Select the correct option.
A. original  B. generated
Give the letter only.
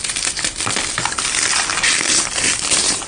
B